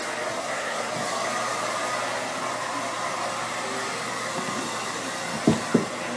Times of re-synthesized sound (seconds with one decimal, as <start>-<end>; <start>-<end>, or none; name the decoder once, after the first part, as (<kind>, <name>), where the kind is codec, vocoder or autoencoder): 0.4-0.9 (codec, SNAC)